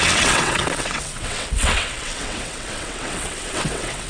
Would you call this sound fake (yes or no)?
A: yes